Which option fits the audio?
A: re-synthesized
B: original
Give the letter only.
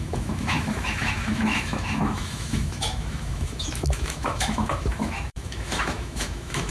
A